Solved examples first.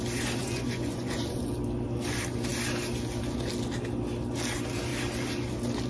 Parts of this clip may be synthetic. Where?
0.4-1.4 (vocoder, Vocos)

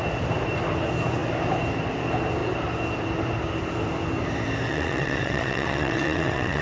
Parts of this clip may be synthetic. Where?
4.7-6.6 (vocoder, WaveNeXt)